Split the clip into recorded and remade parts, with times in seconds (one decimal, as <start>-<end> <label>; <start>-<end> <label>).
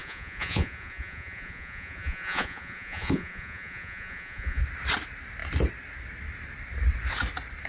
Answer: 0.0-4.6 remade; 4.6-7.7 recorded